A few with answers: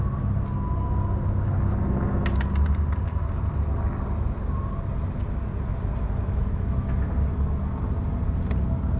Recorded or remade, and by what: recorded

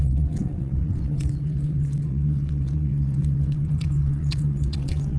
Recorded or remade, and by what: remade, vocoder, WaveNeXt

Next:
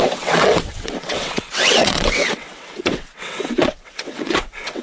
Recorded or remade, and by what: remade, vocoder, WaveNeXt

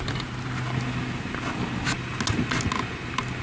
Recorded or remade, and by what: recorded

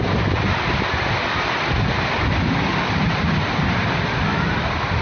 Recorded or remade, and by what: recorded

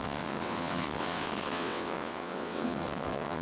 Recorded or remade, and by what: remade, vocoder, WaveNeXt